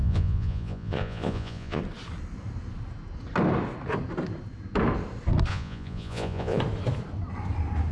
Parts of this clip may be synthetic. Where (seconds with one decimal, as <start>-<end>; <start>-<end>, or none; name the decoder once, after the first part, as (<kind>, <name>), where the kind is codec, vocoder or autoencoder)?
0.0-1.8 (vocoder, Vocos); 5.5-6.6